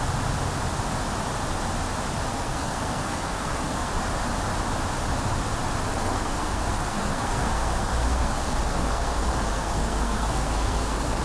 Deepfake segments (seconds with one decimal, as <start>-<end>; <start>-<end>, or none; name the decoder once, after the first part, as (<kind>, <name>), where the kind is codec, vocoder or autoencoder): 2.3-3.9 (codec, SNAC); 5.9-11.2